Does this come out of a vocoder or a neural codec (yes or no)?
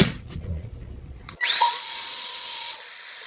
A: yes